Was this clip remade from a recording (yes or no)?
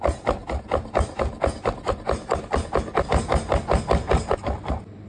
no